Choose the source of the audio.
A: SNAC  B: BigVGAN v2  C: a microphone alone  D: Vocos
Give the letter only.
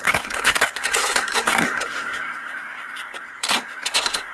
A